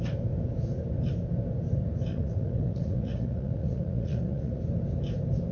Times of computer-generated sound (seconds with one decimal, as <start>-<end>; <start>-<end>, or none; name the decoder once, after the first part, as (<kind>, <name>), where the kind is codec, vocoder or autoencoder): 2.1-4.6 (vocoder, Vocos)